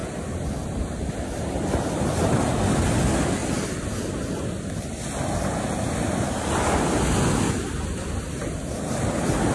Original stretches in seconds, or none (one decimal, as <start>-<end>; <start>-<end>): 0.0-9.5